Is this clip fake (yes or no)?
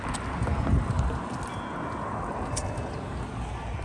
no